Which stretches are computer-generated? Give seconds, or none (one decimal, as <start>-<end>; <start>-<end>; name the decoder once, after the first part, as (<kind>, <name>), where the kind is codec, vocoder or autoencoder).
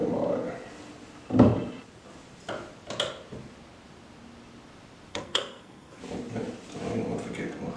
5.1-6.0 (codec, SNAC)